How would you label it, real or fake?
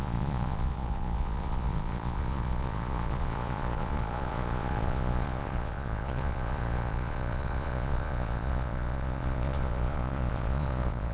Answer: fake